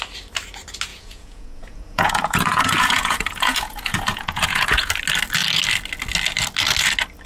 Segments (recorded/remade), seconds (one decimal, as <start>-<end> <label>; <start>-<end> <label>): 0.0-0.9 recorded; 0.9-4.9 remade; 4.9-7.3 recorded